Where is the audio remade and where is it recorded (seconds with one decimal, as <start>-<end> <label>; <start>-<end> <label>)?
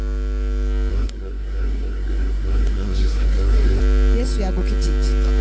0.0-0.9 recorded; 0.9-3.8 remade; 3.8-5.4 recorded